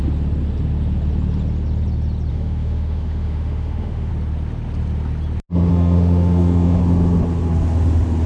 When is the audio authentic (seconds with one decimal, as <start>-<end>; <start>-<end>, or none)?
0.0-2.3; 4.1-5.7; 6.8-8.3